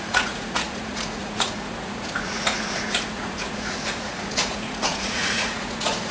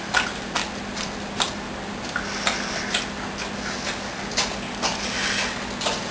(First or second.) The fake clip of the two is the first